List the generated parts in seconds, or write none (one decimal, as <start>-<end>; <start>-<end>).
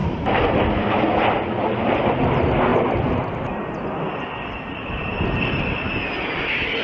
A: 0.0-0.6